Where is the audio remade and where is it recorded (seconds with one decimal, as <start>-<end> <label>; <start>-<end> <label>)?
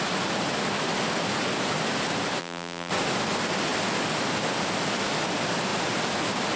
0.0-2.4 recorded; 2.4-2.9 remade; 2.9-6.6 recorded